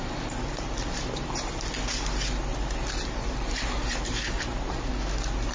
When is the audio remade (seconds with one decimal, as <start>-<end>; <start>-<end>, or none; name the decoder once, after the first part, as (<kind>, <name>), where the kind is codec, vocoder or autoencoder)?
0.9-1.5 (vocoder, BigVGAN v2); 2.5-4.9